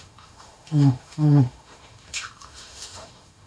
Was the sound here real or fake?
fake